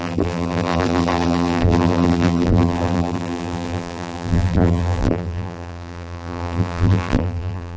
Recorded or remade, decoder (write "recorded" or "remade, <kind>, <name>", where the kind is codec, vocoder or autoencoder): remade, vocoder, BigVGAN v2